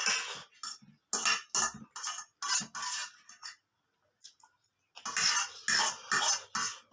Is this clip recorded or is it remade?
recorded